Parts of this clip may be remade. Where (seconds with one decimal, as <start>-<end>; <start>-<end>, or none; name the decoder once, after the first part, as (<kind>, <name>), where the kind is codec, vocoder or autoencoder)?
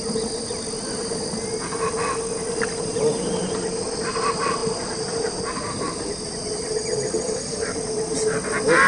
none